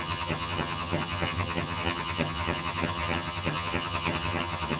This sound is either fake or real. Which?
fake